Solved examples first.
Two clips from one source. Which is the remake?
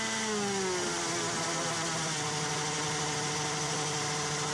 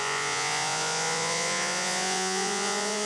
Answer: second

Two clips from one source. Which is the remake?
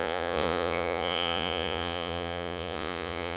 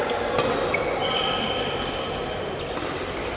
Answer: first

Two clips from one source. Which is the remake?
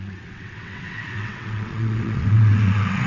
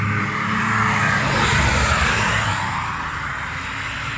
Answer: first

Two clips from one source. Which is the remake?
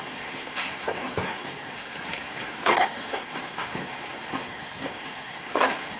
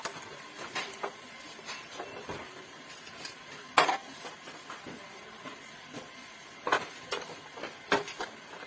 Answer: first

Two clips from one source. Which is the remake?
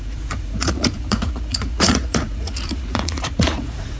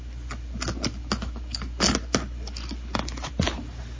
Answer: first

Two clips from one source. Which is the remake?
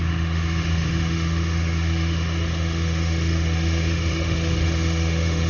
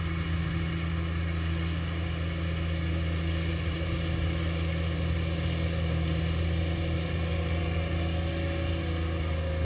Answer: first